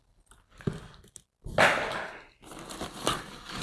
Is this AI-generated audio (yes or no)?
no